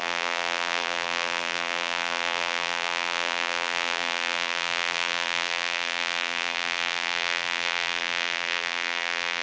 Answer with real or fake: fake